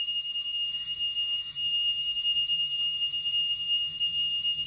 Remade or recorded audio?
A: remade